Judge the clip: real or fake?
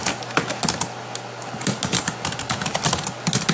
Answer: real